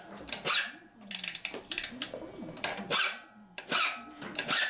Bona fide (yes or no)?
yes